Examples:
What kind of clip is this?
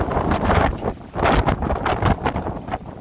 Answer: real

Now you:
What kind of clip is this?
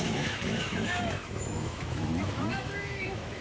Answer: fake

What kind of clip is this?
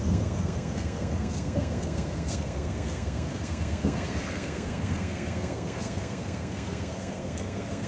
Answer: fake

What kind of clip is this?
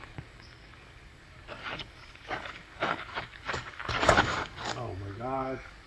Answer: fake